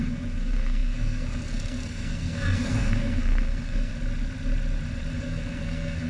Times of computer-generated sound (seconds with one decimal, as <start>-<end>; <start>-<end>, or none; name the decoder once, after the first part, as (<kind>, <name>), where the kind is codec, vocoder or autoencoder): 0.0-3.9 (codec, SNAC); 5.2-6.1